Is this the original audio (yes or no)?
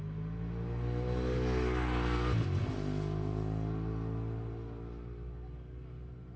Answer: yes